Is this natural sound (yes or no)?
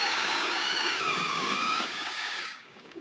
no